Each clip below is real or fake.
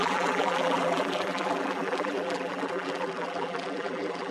fake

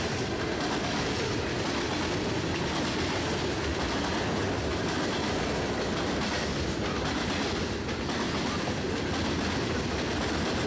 real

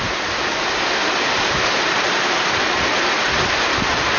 real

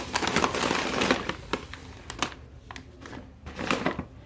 fake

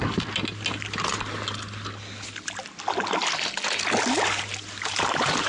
real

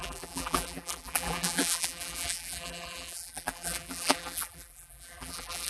fake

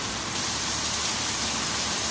fake